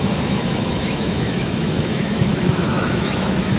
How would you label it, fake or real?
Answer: fake